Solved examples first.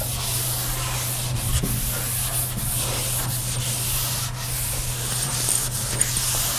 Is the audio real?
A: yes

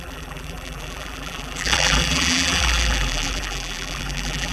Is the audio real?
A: no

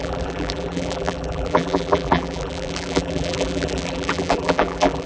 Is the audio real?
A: no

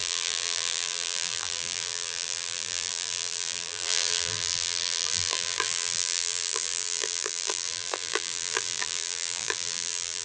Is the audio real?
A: no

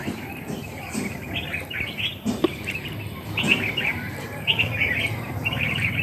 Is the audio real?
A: no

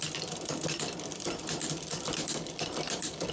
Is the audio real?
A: no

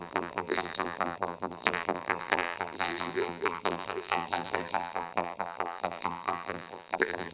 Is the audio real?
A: no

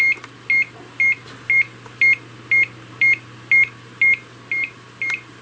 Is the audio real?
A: yes